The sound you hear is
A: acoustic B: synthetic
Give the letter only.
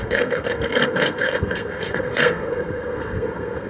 B